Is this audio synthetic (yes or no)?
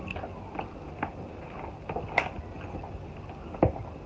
no